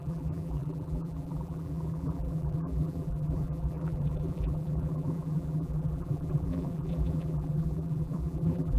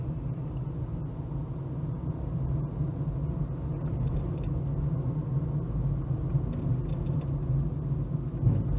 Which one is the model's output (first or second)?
first